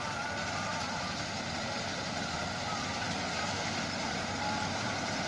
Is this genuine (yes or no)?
no